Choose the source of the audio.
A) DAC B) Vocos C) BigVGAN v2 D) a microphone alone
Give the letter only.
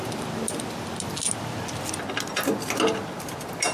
D